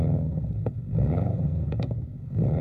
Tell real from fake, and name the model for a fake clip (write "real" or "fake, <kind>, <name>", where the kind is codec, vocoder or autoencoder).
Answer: fake, codec, SNAC